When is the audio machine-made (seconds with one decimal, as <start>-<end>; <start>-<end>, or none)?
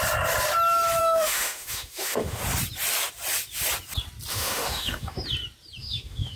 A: 1.0-2.4; 4.3-5.2; 5.8-6.4